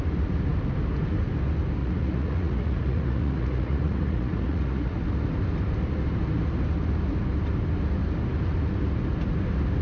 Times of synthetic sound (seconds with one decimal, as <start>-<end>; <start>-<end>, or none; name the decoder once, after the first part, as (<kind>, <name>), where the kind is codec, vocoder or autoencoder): 1.8-5.0 (vocoder, Vocos)